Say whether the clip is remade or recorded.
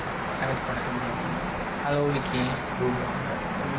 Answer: recorded